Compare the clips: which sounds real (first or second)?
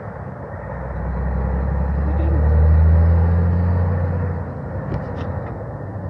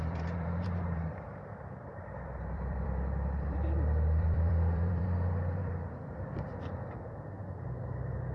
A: first